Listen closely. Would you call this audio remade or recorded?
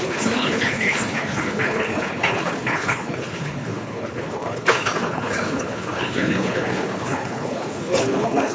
remade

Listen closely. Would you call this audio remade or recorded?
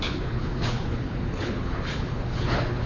remade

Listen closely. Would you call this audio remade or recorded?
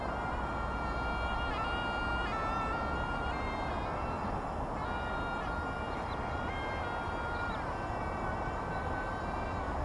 recorded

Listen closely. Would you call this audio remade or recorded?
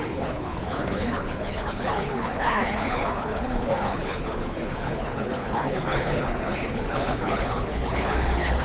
remade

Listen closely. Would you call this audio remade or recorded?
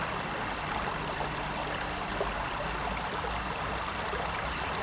recorded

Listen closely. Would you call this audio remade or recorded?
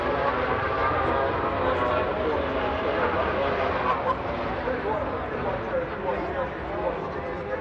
recorded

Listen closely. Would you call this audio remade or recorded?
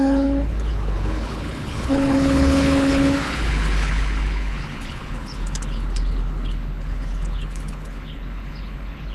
remade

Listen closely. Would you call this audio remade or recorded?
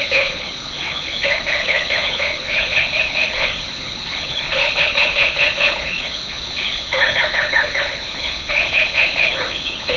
remade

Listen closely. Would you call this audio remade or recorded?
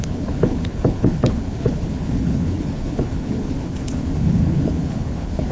remade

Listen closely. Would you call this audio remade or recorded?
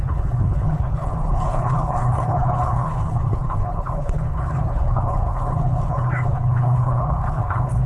remade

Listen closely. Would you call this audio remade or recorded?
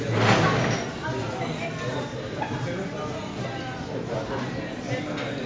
recorded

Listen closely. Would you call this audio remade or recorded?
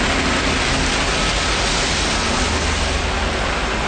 recorded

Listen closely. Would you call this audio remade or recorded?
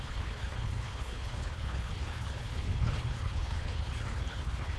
remade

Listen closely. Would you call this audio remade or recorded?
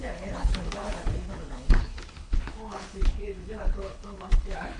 remade